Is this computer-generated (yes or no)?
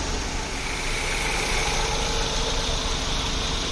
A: no